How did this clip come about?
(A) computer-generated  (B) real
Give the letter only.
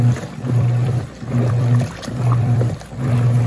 A